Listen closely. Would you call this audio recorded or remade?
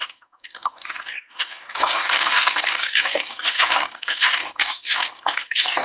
remade